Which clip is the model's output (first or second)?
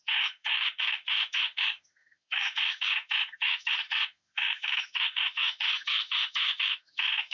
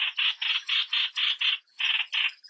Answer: first